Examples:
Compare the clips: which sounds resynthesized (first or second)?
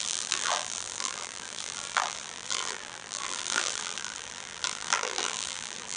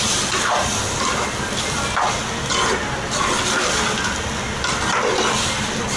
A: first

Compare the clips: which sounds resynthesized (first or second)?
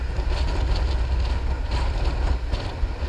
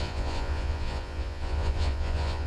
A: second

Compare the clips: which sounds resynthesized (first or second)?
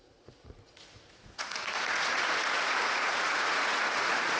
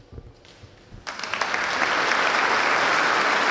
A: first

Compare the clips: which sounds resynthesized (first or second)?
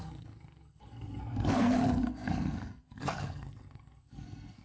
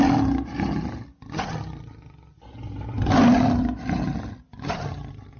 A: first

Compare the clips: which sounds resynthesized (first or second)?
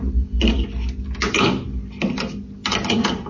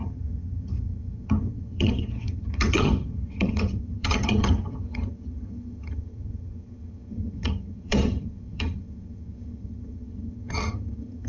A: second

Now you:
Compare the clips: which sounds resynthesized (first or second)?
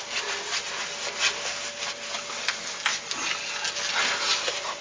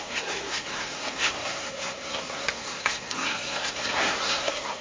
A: second